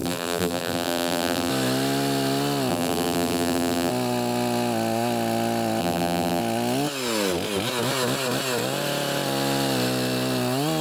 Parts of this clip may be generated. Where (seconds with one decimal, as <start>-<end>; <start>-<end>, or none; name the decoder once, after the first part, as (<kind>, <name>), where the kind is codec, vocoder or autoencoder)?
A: 0.0-1.5 (vocoder, BigVGAN v2); 2.7-3.9; 5.8-6.4